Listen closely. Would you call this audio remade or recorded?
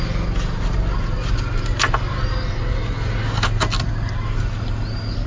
recorded